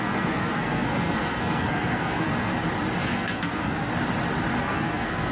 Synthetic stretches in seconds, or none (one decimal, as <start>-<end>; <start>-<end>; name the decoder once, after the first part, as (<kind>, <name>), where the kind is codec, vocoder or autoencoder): 0.0-2.5 (codec, SNAC); 3.0-3.9; 4.6-5.3